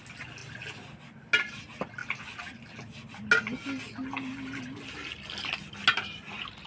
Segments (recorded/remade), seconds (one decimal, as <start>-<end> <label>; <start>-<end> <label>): 0.0-6.7 recorded